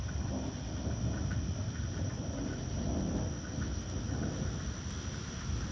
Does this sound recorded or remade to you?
recorded